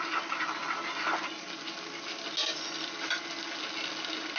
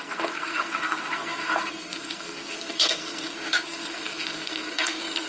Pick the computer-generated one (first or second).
second